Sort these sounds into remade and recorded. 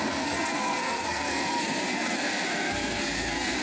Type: remade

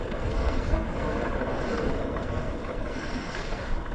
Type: remade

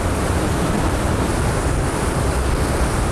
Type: recorded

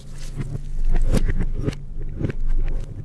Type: recorded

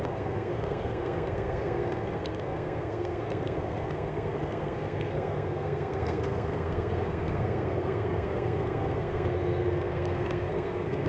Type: remade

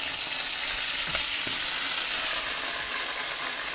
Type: recorded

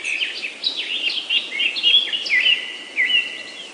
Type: recorded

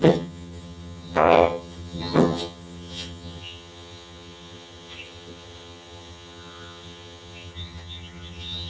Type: remade